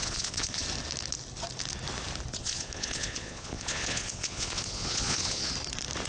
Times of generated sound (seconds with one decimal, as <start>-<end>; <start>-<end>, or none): 0.0-0.6; 2.4-5.5